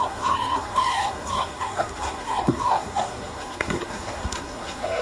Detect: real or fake fake